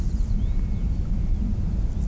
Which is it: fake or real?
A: real